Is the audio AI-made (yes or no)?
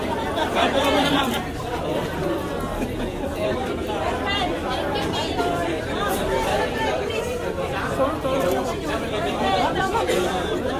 yes